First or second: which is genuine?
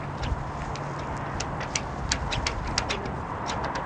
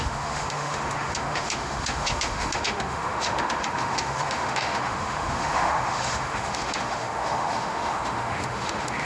first